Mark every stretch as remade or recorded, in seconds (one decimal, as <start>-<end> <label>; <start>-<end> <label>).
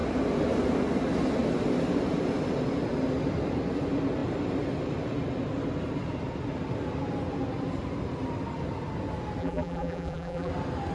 0.0-9.4 recorded; 9.4-10.5 remade; 10.5-10.9 recorded